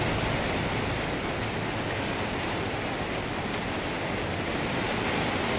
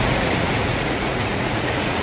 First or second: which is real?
first